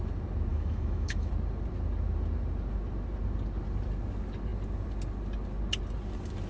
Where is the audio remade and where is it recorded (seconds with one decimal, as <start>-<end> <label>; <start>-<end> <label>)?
0.0-0.5 recorded; 0.5-1.3 remade; 1.3-6.5 recorded